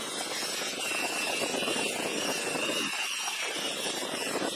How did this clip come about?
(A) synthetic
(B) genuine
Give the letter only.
B